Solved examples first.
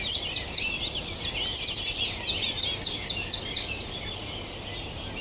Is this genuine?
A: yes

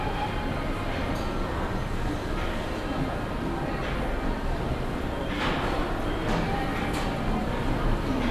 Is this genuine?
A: yes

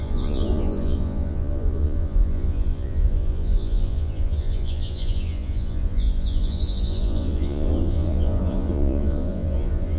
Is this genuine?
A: no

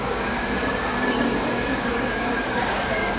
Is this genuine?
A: no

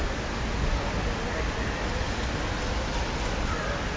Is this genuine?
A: yes